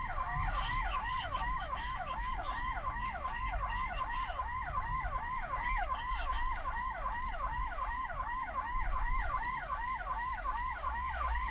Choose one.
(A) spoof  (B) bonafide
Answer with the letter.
A